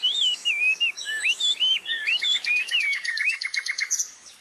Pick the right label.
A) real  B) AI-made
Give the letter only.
B